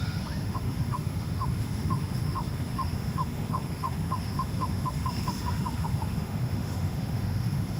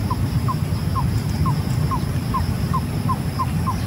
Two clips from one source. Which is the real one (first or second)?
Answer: second